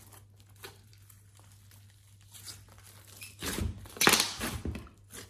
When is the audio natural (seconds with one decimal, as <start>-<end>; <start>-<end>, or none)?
0.0-5.3